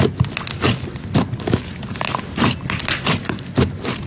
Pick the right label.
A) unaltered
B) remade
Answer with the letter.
A